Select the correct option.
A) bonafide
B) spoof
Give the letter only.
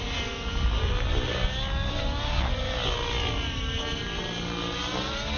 A